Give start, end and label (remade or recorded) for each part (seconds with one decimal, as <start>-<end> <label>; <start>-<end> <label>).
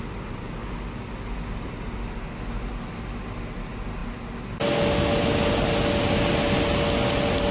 0.0-7.5 recorded